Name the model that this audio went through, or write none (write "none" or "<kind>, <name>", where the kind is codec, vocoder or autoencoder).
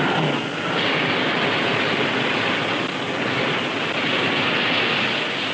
none